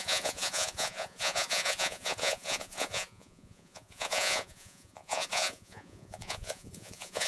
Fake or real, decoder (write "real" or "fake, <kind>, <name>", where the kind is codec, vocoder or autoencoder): fake, vocoder, Vocos